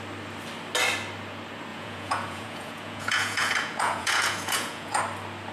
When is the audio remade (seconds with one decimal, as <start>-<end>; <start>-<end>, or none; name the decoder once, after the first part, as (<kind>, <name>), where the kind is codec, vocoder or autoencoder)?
1.7-5.0 (vocoder, Vocos)